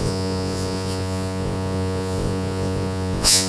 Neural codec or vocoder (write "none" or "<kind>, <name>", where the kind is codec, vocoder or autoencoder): vocoder, Vocos